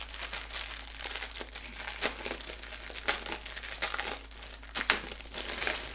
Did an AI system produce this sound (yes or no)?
no